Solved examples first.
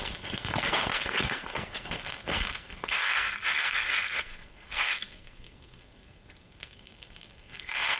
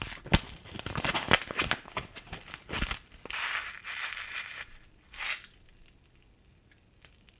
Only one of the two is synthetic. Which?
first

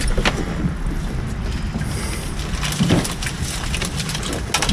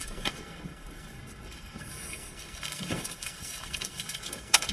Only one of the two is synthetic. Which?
second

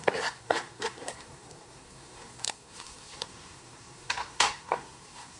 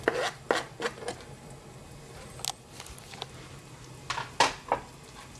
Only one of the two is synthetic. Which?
first